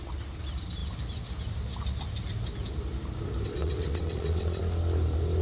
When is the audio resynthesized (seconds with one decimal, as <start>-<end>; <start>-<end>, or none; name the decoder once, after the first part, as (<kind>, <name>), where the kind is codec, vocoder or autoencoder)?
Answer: 3.6-4.6 (vocoder, WaveNeXt)